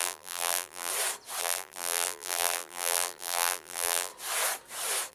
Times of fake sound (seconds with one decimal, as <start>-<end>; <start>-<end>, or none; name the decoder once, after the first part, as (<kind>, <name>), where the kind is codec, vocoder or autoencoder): 0.0-0.9 (vocoder, BigVGAN v2); 1.4-4.1

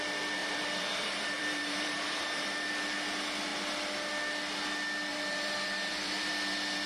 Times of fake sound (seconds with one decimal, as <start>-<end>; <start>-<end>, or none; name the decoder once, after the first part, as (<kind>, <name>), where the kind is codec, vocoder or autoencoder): 0.4-2.7 (vocoder, BigVGAN v2); 5.1-6.3

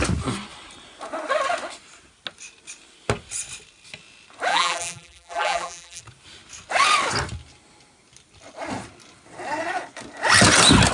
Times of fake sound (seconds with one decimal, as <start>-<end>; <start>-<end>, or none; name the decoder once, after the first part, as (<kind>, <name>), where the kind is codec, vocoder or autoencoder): 4.5-6.0 (vocoder, BigVGAN v2)

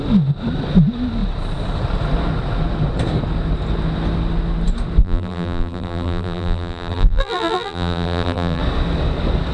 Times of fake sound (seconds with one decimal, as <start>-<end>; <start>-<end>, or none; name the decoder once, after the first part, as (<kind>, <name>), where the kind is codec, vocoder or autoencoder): 5.0-8.6 (vocoder, BigVGAN v2)